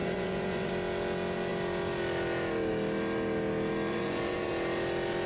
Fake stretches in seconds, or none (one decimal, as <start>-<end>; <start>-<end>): 0.0-0.7; 3.9-4.5